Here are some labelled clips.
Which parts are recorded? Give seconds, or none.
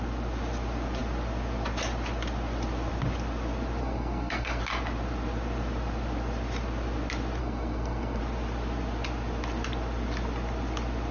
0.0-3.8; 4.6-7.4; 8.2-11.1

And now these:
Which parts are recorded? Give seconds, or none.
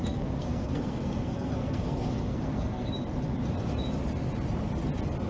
2.9-5.3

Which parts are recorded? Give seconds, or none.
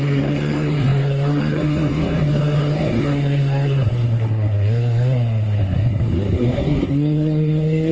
none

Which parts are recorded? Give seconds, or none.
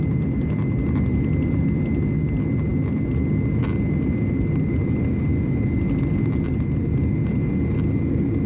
0.0-8.5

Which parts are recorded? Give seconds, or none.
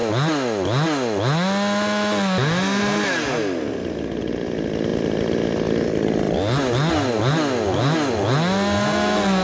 0.0-9.4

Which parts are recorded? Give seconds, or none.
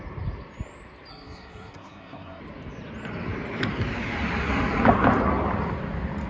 0.0-1.1; 2.4-6.3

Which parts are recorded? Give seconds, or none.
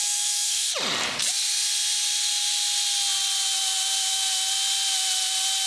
0.7-5.7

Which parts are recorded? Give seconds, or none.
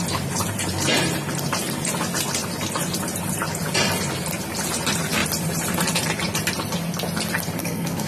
0.0-7.6